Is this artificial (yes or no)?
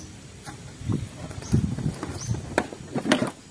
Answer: yes